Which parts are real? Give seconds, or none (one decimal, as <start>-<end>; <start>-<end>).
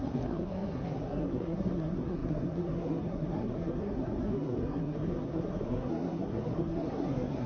none